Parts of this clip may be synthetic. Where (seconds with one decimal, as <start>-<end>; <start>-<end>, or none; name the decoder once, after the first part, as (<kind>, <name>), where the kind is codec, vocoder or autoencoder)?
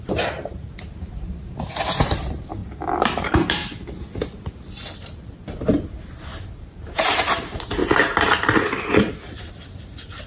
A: 0.0-2.6 (vocoder, BigVGAN v2); 3.2-3.6; 6.5-7.8; 9.1-10.3